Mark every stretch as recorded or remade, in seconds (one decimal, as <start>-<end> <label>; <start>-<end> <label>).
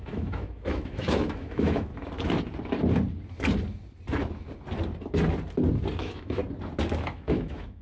0.0-1.9 remade; 1.9-6.0 recorded; 6.0-6.4 remade; 6.4-7.1 recorded; 7.1-7.8 remade